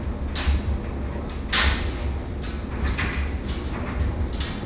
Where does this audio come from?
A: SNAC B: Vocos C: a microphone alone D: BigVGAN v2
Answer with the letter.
C